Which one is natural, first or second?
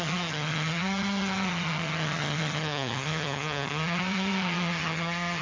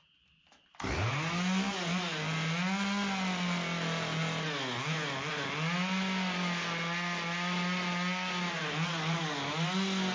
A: second